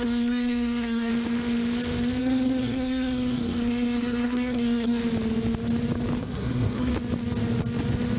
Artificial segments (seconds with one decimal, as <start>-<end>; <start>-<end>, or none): 0.0-1.1; 2.2-5.0; 6.2-6.9